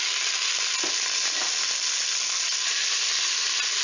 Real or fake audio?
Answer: real